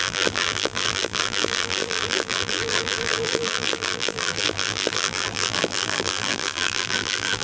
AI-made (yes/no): yes